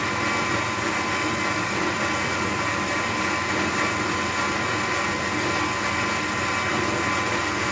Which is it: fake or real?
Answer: real